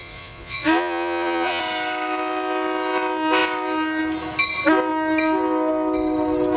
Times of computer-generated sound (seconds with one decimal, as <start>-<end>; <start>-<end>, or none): 0.0-1.6